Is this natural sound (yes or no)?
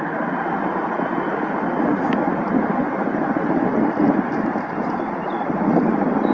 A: yes